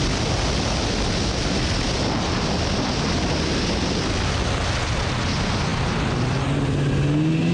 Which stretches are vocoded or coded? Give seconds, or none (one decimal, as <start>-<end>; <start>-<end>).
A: none